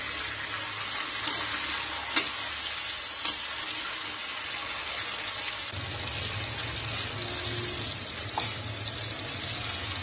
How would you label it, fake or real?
real